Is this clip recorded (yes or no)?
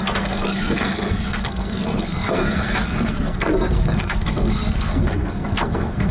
no